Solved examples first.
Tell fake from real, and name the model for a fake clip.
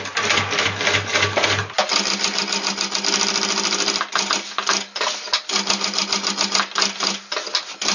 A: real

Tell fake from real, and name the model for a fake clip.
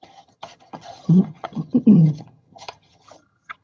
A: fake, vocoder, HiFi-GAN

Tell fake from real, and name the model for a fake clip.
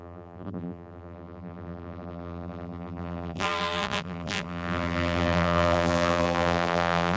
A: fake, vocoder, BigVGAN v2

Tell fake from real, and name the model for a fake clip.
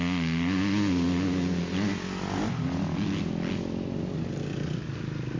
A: real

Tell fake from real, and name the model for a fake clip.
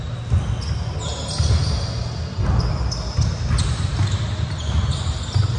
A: real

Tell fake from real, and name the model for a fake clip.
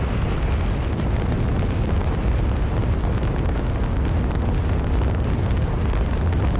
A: real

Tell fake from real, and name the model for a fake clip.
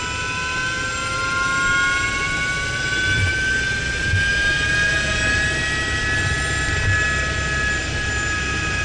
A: real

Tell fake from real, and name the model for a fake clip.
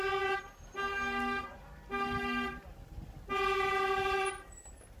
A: real